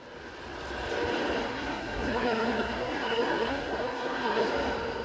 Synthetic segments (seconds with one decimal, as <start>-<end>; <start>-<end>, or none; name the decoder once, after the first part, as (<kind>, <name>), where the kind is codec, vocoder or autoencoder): 1.5-4.5 (codec, SNAC)